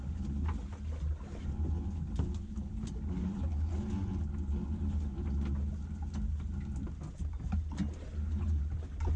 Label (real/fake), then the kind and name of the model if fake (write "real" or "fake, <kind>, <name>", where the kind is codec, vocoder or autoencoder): real